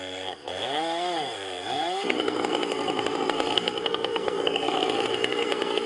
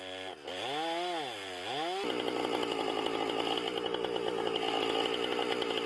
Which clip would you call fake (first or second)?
first